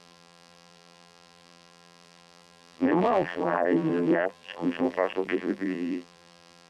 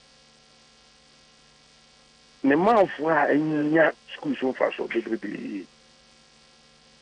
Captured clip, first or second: second